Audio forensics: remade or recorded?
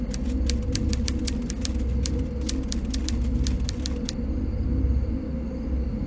recorded